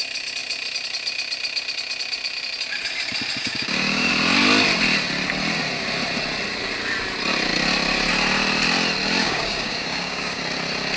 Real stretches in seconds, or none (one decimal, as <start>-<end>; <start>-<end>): 0.0-3.4; 4.1-9.2; 10.4-11.0

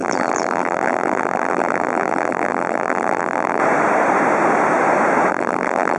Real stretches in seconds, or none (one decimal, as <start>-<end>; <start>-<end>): 3.6-5.3

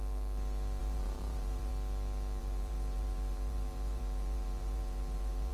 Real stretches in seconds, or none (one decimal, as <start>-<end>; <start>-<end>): 0.0-0.8; 1.7-2.4